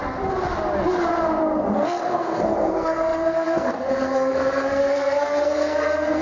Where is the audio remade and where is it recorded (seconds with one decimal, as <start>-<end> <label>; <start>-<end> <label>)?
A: 0.0-1.8 recorded; 1.8-6.2 remade